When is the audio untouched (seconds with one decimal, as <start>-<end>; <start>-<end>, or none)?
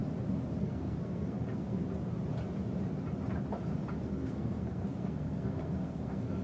0.0-0.6; 1.8-4.0